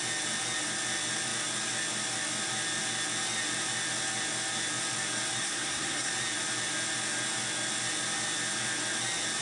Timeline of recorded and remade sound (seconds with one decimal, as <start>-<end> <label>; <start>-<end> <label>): 0.0-5.4 recorded; 5.4-6.1 remade; 6.1-9.4 recorded